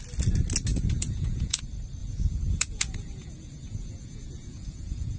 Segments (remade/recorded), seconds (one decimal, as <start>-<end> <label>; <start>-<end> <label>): 0.0-0.7 recorded; 0.7-1.6 remade; 1.6-2.0 recorded; 2.0-5.2 remade